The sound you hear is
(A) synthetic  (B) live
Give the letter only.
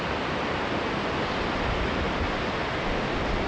B